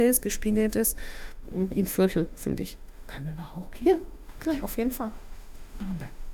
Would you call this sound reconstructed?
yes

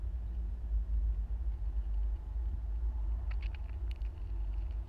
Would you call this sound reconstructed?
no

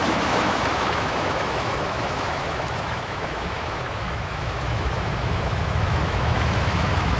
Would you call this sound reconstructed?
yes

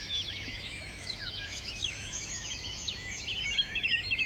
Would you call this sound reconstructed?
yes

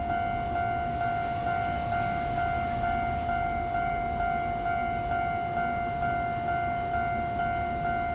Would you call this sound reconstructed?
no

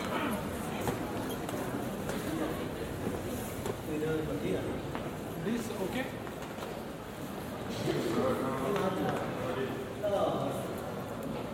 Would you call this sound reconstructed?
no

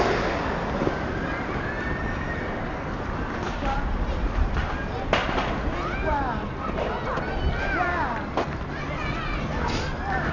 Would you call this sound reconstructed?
no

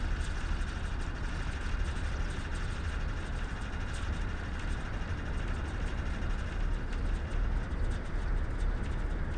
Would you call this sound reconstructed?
no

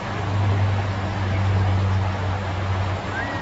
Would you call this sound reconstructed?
no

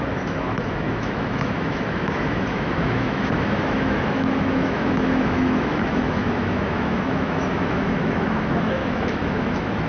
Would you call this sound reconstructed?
yes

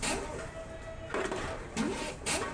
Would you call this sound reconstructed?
no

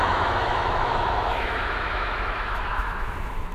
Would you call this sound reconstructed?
yes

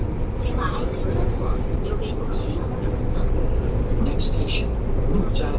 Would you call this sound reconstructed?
no